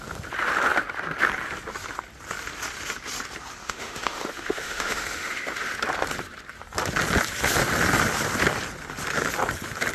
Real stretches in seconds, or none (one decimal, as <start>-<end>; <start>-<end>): 0.0-3.6; 5.7-9.9